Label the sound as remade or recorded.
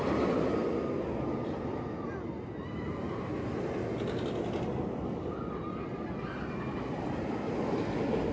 recorded